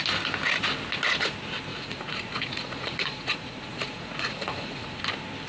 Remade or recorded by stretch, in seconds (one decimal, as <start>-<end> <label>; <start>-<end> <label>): 0.0-1.7 recorded; 1.7-5.0 remade; 5.0-5.5 recorded